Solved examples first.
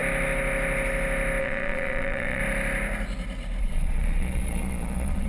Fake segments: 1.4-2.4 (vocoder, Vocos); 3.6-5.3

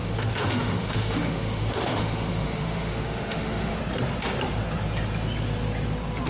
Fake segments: 0.0-3.8 (autoencoder, DAC-VAE)